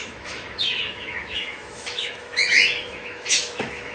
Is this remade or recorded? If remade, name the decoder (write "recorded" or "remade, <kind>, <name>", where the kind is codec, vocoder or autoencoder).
remade, autoencoder, DAC-VAE